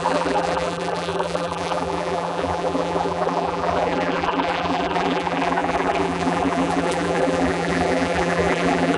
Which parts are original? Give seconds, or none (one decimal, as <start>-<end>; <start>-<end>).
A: none